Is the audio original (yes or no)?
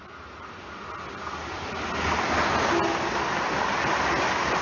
yes